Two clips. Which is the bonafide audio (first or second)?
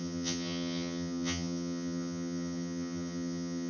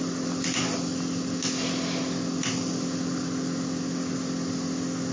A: second